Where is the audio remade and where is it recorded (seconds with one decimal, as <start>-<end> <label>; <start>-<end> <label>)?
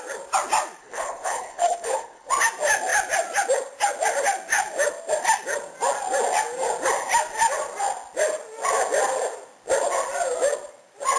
0.0-0.8 recorded; 0.8-2.3 remade; 2.3-11.2 recorded